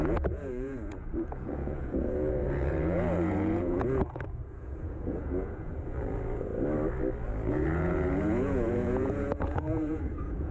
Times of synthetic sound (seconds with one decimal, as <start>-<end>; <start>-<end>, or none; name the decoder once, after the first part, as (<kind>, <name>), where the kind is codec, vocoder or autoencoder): 0.0-6.5 (vocoder, Vocos); 7.5-10.5